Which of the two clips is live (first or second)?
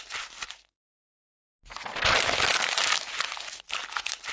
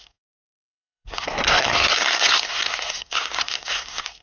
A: first